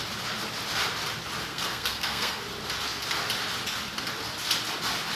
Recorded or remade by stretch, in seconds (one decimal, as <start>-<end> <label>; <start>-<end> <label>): 0.0-1.5 recorded; 1.5-2.4 remade; 2.4-5.2 recorded